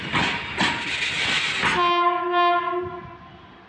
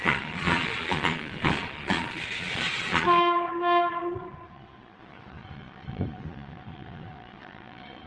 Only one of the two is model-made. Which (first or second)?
second